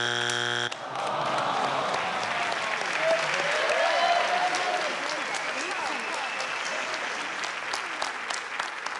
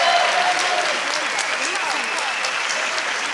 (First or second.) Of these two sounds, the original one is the first